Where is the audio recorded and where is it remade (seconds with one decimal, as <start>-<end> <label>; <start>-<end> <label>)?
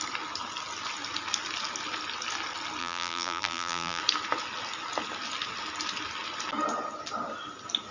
0.0-2.8 recorded; 2.8-4.0 remade; 4.0-7.9 recorded